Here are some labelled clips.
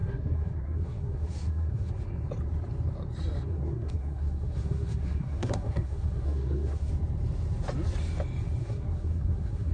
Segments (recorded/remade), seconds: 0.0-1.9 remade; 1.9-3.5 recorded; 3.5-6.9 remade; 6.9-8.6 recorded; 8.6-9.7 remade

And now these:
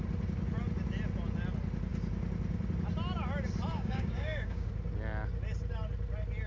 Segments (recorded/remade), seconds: 0.0-3.7 recorded; 3.7-4.7 remade; 4.7-6.5 recorded